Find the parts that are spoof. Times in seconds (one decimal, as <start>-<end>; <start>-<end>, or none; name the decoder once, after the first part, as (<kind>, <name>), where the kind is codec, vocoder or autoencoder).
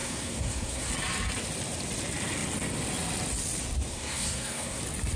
0.0-0.9 (codec, SNAC); 3.9-4.8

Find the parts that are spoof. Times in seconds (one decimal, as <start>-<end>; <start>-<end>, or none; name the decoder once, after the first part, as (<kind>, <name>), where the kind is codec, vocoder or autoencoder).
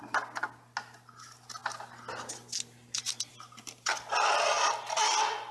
none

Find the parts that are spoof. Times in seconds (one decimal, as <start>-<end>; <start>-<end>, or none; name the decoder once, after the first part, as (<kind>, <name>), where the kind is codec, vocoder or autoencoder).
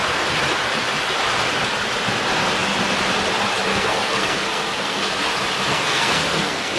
3.7-5.2 (codec, SNAC); 5.7-6.8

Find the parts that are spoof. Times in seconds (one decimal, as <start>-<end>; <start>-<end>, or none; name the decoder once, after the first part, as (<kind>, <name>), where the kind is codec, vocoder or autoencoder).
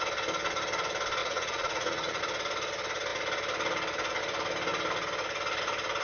1.2-2.2 (vocoder, Vocos)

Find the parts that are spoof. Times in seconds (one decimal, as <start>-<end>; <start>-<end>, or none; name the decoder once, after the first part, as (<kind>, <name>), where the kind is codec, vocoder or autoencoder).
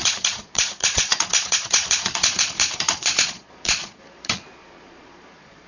0.0-5.7 (vocoder, Vocos)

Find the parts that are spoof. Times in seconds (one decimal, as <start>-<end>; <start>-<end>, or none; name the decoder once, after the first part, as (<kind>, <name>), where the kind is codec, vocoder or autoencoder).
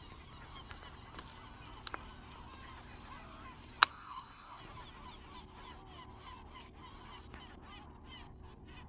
3.9-4.6 (codec, SNAC)